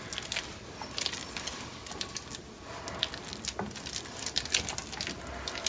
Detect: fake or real real